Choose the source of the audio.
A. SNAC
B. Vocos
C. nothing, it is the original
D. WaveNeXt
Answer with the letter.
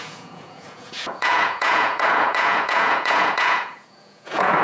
B